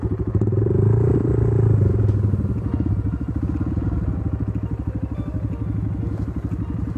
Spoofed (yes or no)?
no